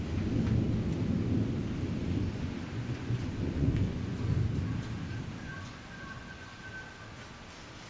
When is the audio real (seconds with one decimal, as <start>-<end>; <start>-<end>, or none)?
0.0-2.0; 4.2-5.4; 6.6-7.9